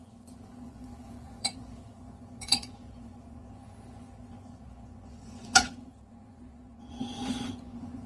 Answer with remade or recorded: remade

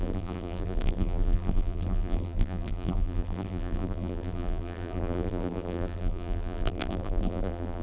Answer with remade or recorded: remade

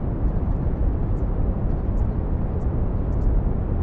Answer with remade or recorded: recorded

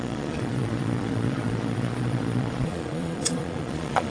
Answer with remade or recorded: remade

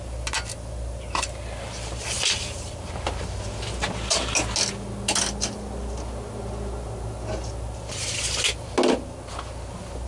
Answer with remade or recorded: recorded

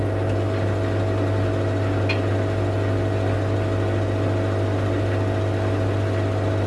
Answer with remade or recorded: recorded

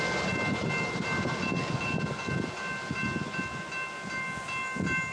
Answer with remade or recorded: recorded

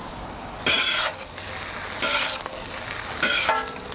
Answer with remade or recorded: recorded